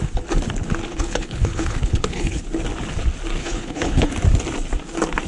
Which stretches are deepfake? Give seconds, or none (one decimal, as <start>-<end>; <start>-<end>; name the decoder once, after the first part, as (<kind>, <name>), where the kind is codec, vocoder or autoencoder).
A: 0.9-2.4 (codec, HILCodec); 3.4-4.1